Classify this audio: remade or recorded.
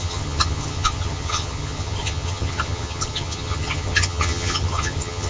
remade